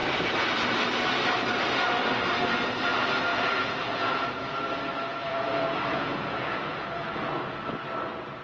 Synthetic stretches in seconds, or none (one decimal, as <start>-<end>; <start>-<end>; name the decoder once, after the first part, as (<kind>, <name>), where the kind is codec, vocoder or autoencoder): 3.3-4.4 (vocoder, Vocos); 5.1-7.3